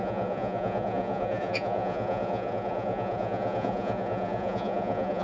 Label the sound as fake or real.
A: fake